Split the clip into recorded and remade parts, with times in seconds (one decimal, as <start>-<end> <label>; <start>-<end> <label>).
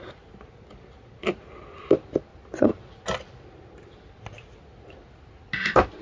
0.0-2.3 recorded; 2.3-2.8 remade; 2.8-6.0 recorded